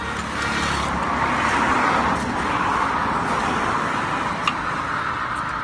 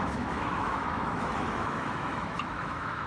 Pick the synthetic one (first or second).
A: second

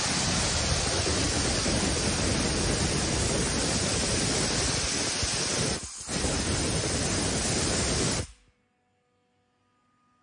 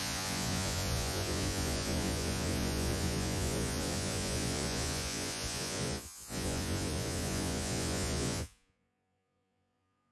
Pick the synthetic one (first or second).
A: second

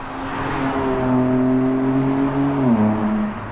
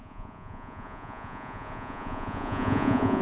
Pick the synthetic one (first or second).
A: second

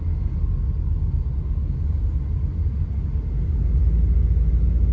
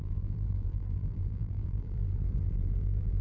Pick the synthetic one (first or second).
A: second